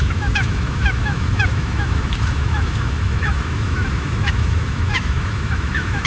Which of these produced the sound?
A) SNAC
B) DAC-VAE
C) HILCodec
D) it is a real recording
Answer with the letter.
B